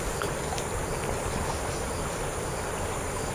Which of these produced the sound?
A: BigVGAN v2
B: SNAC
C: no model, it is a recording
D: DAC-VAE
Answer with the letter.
C